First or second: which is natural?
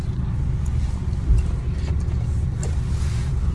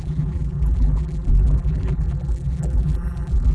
first